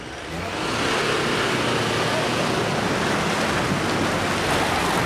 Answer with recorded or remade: recorded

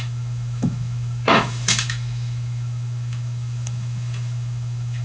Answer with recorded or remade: remade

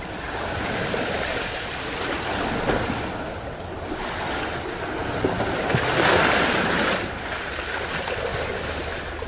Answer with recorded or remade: recorded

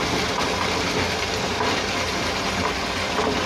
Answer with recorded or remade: recorded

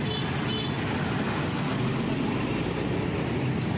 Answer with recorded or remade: recorded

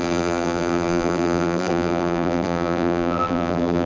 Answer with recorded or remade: remade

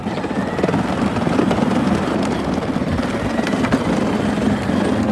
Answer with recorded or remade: recorded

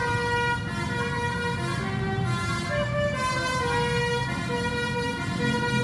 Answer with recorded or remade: recorded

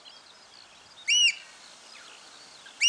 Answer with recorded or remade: recorded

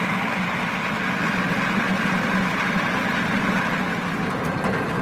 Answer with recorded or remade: recorded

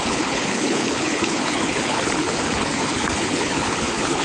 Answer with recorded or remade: remade